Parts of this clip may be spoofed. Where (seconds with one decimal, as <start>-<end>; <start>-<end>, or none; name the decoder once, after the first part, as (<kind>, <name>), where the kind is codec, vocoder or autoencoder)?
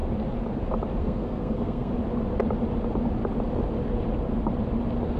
1.0-1.9 (codec, SNAC)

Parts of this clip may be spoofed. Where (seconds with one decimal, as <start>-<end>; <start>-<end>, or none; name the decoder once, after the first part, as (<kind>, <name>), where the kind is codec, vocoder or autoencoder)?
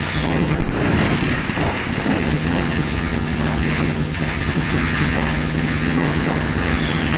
0.0-0.6 (vocoder, HiFi-GAN); 2.2-7.2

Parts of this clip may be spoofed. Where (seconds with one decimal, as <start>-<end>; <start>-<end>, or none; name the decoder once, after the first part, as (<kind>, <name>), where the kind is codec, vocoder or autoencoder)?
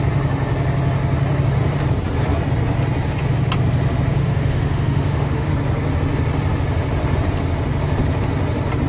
4.2-5.5 (autoencoder, DAC-VAE)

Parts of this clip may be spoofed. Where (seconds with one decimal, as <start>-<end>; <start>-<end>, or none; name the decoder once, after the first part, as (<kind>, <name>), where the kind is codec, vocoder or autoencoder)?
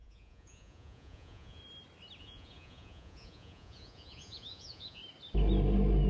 0.0-1.6 (vocoder, Vocos); 2.2-5.0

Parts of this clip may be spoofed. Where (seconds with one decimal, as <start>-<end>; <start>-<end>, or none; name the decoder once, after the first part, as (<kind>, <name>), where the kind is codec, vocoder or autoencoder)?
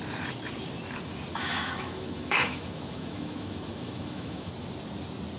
1.3-4.5 (autoencoder, DAC-VAE)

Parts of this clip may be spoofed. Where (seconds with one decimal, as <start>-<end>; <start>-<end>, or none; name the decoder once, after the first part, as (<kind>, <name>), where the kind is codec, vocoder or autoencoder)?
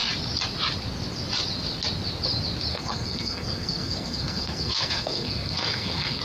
2.7-6.2 (codec, SNAC)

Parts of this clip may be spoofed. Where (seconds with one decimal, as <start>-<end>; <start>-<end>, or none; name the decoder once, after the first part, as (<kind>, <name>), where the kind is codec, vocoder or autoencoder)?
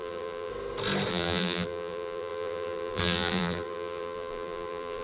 0.0-0.5 (vocoder, BigVGAN v2); 1.1-5.0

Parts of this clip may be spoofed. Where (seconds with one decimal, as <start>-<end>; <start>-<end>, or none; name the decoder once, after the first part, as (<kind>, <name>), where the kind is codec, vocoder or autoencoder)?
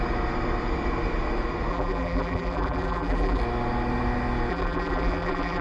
1.7-3.4 (vocoder, BigVGAN v2); 4.5-5.6